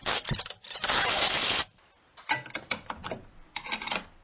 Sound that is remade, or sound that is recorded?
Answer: recorded